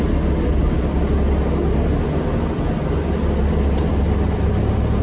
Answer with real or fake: real